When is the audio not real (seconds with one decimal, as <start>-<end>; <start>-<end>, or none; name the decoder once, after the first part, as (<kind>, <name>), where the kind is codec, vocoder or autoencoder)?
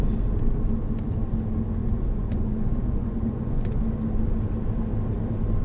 1.8-3.8 (vocoder, Vocos)